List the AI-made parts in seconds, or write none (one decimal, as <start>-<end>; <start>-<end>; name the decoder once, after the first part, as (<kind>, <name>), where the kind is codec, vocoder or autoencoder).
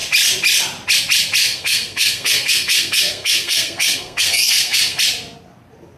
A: 1.4-5.0 (codec, SNAC)